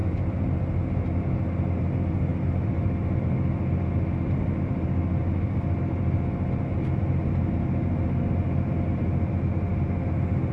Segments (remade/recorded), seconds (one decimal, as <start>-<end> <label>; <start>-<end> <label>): 0.0-10.5 recorded